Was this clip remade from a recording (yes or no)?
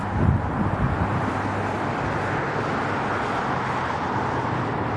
no